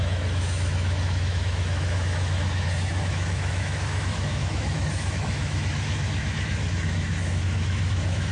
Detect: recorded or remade remade